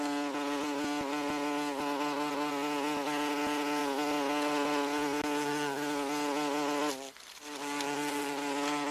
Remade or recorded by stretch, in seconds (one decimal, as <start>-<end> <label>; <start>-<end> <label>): 0.0-8.9 recorded